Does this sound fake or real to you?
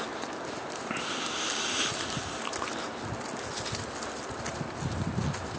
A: real